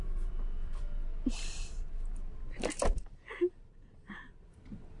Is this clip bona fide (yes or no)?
no